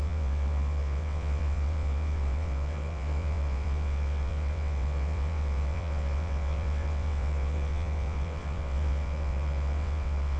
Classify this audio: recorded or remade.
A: remade